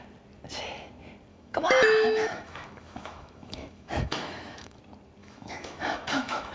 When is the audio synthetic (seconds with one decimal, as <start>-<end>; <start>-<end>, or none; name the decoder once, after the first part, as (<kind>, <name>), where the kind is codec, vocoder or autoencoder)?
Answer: 1.3-4.8 (autoencoder, DAC-VAE); 5.2-6.5